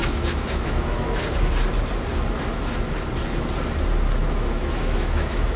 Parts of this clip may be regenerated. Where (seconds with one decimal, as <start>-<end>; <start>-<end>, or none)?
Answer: 0.0-1.2; 4.2-5.6